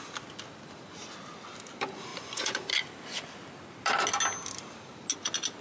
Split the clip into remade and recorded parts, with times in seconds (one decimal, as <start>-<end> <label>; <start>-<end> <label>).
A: 0.0-2.1 recorded; 2.1-2.7 remade; 2.7-5.6 recorded